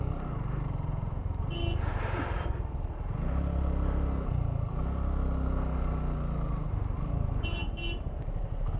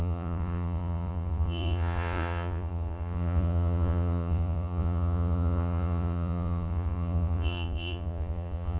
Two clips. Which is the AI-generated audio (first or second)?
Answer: second